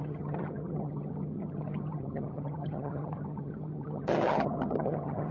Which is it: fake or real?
fake